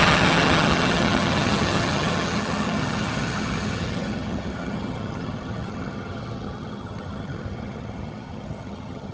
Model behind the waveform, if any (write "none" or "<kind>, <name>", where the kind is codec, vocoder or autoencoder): vocoder, HiFi-GAN